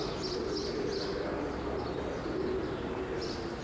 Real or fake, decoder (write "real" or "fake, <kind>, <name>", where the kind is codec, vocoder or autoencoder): real